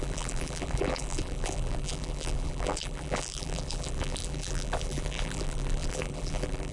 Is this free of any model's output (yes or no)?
no